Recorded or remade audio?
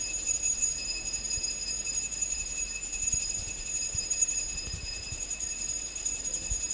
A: remade